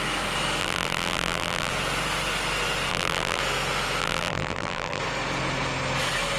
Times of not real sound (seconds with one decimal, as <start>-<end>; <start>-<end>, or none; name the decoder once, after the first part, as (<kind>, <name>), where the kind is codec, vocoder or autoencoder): 0.6-1.7 (vocoder, BigVGAN v2); 2.9-3.4; 4.0-5.0